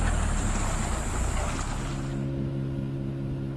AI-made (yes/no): no